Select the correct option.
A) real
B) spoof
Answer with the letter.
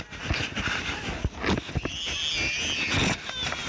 A